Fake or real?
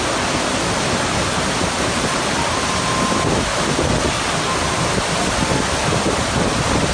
real